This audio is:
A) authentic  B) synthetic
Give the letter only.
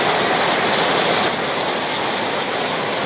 A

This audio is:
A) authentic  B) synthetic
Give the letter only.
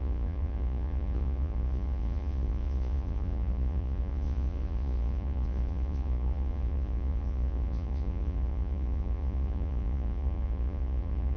B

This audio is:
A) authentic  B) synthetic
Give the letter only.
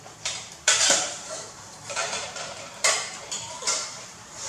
B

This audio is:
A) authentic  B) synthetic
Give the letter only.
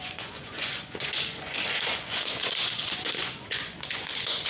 B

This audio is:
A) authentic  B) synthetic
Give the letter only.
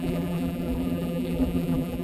B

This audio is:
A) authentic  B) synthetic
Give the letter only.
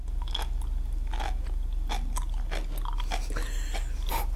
A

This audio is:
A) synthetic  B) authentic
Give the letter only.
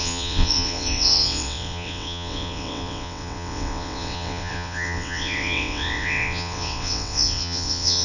A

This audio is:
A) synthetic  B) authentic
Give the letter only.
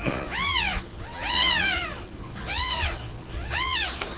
A